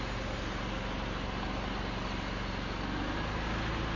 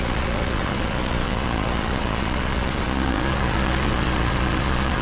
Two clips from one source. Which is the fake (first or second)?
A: second